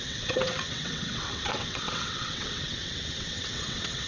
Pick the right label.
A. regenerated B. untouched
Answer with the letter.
A